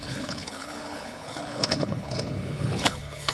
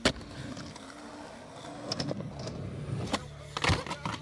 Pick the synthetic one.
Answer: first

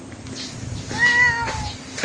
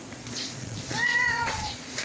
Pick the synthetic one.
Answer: second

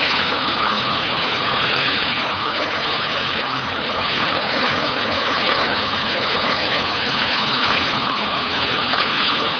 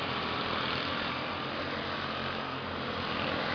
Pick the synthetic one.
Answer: first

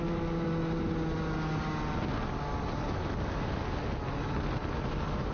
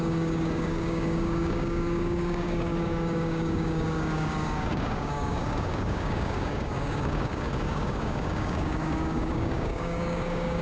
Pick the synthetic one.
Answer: second